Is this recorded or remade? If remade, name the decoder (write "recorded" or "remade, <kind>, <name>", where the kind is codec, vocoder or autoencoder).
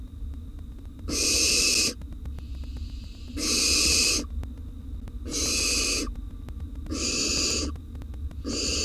recorded